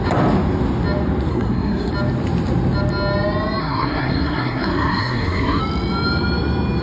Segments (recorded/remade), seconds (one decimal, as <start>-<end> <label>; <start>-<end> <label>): 0.0-1.3 recorded; 1.3-1.9 remade; 1.9-3.6 recorded; 3.6-5.6 remade; 5.6-6.8 recorded